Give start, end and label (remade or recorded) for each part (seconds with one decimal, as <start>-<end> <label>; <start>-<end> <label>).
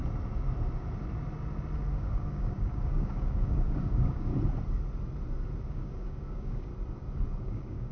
0.0-1.9 recorded; 1.9-4.3 remade; 4.3-5.6 recorded; 5.6-6.7 remade; 6.7-7.4 recorded; 7.4-7.9 remade